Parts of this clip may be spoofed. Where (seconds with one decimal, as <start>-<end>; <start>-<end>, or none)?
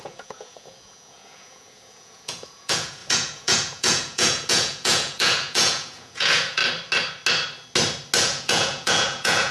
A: 0.0-6.6; 8.2-9.5